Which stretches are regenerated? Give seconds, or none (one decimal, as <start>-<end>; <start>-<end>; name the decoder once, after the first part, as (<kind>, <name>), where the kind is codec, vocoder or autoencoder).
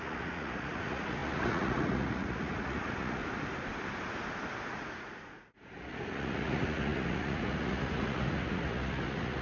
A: 0.0-3.2 (vocoder, Vocos); 4.7-9.4